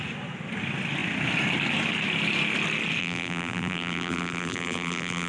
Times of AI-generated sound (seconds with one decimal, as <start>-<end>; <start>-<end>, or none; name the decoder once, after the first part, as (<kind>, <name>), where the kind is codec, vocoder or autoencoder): 3.0-5.3 (vocoder, BigVGAN v2)

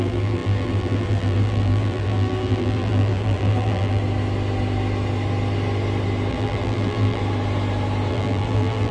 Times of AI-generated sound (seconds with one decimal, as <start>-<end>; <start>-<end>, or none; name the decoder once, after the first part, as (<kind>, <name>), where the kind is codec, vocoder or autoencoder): 0.0-4.0 (vocoder, BigVGAN v2); 6.3-7.2; 8.1-8.9

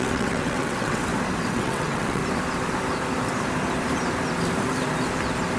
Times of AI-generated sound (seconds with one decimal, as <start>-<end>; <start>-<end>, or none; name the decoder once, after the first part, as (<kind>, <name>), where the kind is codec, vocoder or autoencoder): 0.0-1.0 (vocoder, WaveNeXt); 1.5-2.2